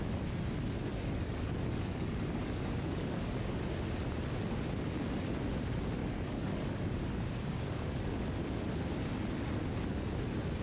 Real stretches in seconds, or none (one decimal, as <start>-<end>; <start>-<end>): 0.0-0.9; 3.7-6.0; 8.2-10.6